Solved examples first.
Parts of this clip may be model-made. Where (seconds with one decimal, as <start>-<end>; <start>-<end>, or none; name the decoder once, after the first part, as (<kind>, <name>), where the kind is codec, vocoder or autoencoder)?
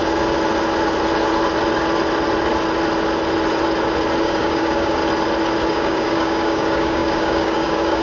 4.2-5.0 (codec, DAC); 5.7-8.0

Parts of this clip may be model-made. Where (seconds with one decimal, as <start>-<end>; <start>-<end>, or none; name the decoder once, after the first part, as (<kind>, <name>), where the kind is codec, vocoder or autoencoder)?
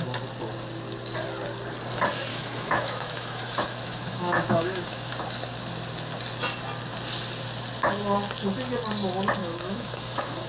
2.3-5.1 (autoencoder, DAC-VAE); 9.4-10.5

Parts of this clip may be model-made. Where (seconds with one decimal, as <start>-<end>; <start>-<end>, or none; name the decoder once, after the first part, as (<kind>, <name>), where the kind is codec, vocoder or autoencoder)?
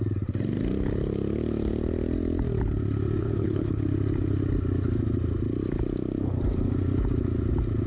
3.2-3.8 (codec, HILCodec)